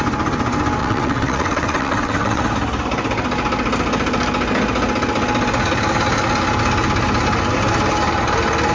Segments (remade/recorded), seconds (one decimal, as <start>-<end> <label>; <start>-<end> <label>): 0.0-0.8 recorded; 0.8-2.4 remade; 2.4-8.7 recorded